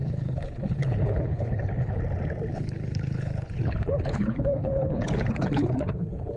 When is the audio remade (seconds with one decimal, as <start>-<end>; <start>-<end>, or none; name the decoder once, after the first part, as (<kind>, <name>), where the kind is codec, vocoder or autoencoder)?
0.0-2.0 (codec, HILCodec); 2.5-6.4